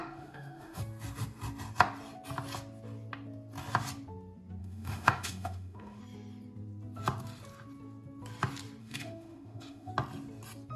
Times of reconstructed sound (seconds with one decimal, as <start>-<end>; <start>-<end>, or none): 0.0-0.8; 4.6-6.0; 8.8-9.9